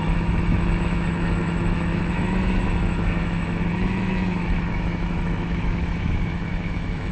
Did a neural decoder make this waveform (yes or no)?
yes